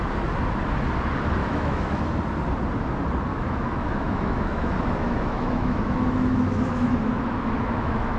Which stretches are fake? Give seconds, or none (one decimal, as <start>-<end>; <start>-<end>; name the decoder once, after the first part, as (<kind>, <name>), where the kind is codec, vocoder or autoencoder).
1.4-2.0 (autoencoder, DAC-VAE); 3.3-8.2